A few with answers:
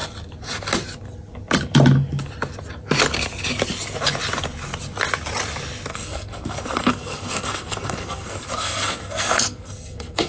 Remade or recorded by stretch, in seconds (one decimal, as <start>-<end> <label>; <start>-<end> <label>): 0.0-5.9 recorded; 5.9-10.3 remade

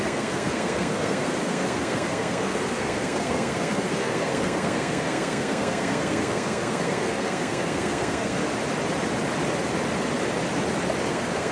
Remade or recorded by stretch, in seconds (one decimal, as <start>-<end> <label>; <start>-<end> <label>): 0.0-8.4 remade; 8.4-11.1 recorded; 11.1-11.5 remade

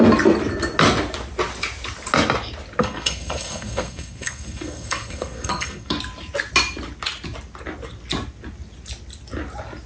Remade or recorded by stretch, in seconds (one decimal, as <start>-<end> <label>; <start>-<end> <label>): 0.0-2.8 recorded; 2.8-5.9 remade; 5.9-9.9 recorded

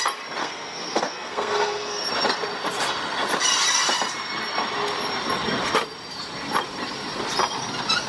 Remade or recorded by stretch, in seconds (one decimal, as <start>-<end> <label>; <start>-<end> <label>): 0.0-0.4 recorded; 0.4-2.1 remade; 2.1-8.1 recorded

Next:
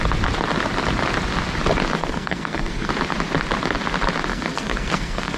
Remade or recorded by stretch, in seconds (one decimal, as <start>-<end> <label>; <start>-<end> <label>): 0.0-2.0 recorded; 2.0-2.9 remade; 2.9-4.3 recorded; 4.3-5.4 remade

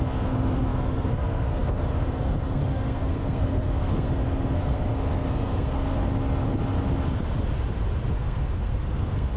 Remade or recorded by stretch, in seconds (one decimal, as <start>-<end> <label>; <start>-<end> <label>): 0.0-6.0 remade; 6.0-8.1 recorded; 8.1-9.4 remade